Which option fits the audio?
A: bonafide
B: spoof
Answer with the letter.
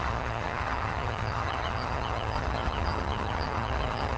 B